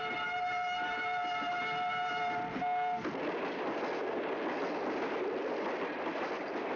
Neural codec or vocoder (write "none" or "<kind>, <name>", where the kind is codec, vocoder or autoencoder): none